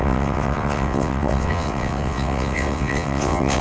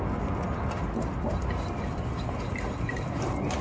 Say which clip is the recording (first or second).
second